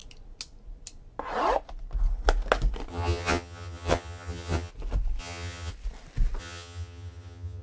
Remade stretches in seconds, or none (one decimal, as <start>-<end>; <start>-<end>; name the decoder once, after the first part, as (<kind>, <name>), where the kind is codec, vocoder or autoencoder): 2.9-4.7 (vocoder, HiFi-GAN); 5.2-5.7; 6.4-7.6